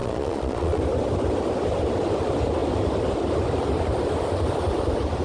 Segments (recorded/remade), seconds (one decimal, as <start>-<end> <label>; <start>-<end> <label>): 0.0-0.8 remade; 0.8-5.2 recorded